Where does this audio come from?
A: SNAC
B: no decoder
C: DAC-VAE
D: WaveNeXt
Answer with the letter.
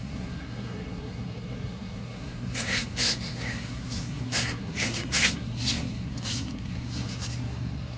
A